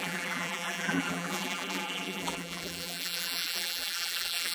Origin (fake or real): fake